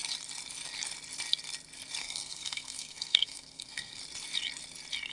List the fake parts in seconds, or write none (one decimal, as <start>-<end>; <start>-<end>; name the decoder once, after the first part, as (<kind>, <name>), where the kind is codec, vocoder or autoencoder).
2.0-4.0 (codec, SNAC)